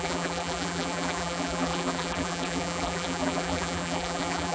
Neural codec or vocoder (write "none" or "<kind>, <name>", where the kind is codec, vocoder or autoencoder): vocoder, BigVGAN v2